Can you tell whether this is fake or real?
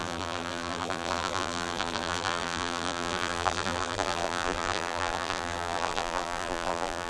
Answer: fake